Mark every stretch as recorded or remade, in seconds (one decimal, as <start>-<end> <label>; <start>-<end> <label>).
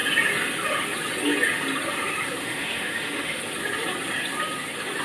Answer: 0.0-2.4 recorded; 2.4-3.4 remade; 3.4-5.0 recorded